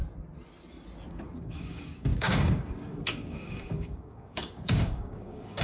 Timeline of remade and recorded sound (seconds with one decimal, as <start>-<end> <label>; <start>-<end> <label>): 0.0-1.1 recorded; 1.1-5.6 remade

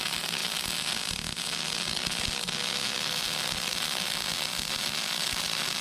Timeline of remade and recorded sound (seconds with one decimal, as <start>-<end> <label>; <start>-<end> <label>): 0.0-5.8 recorded